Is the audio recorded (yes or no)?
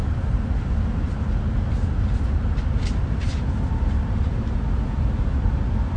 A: yes